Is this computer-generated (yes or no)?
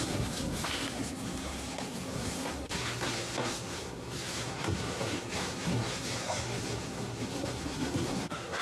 yes